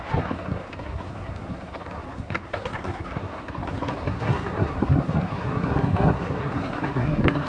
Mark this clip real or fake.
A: fake